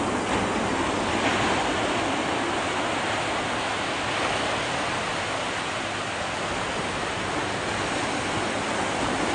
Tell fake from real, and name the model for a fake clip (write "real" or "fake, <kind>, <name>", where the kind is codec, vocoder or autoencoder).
real